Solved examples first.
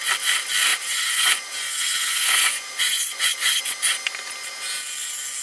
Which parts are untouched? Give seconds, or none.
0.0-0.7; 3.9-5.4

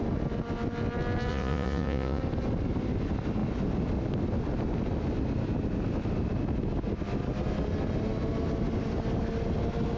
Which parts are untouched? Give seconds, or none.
0.0-1.3; 2.2-10.0

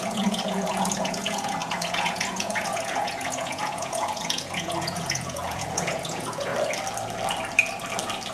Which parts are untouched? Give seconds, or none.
6.5-8.3

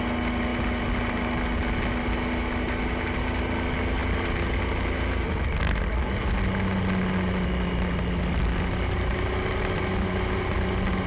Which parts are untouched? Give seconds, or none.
0.0-11.1

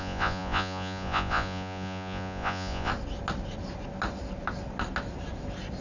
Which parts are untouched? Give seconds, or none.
2.9-5.8

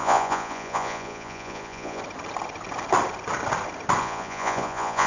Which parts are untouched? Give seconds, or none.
2.0-4.0

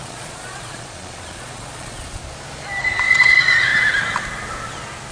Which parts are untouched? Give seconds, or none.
2.2-2.8; 3.7-5.1

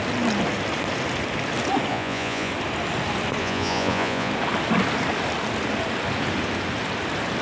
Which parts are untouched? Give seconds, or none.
0.0-1.9; 2.5-3.4; 4.3-7.4